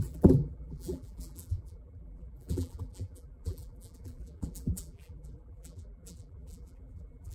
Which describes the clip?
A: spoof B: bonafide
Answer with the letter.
A